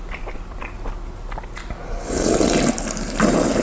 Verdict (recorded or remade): recorded